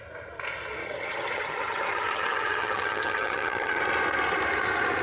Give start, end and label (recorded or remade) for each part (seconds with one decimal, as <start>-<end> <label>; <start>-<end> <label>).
0.0-0.8 recorded; 0.8-3.8 remade; 3.8-5.0 recorded

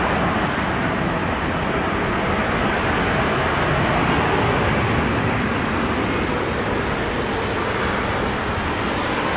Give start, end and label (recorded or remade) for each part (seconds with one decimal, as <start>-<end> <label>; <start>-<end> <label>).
0.0-9.4 recorded

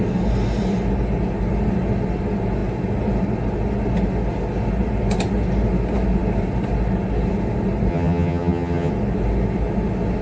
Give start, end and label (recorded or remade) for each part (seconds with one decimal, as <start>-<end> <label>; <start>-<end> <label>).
0.0-7.9 recorded; 7.9-8.9 remade; 8.9-10.2 recorded

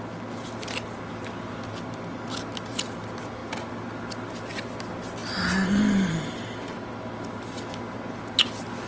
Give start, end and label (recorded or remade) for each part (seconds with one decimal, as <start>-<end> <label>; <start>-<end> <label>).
0.0-8.9 recorded